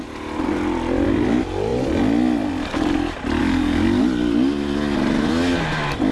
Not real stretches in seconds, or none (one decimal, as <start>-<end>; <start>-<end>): 3.4-4.0